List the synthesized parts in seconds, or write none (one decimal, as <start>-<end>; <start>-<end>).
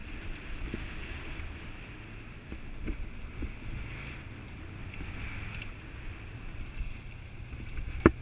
none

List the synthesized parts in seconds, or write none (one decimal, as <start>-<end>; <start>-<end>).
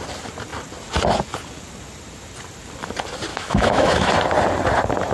3.3-4.1